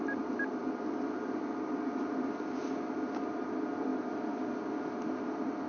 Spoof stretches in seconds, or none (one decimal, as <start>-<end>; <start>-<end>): none